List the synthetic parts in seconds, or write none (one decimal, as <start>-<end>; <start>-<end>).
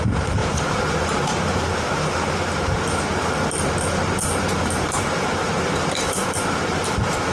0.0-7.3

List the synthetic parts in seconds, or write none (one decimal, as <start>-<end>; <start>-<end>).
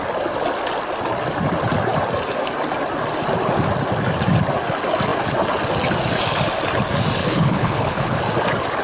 7.2-8.2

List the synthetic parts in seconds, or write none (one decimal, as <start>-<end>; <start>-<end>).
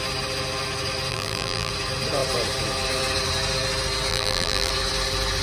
1.1-1.7; 4.1-4.7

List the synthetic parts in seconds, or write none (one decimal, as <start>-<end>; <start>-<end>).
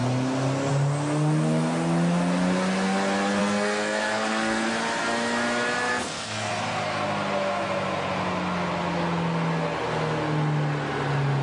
3.4-4.7; 5.9-6.5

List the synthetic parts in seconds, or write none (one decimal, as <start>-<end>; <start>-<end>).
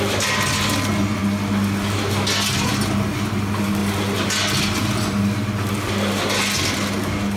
none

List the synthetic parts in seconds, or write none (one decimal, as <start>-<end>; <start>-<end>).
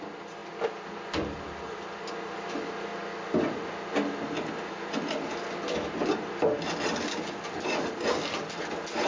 none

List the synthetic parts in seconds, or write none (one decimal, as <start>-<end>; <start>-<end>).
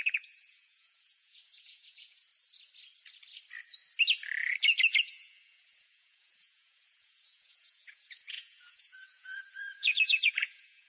0.0-2.3; 5.0-10.9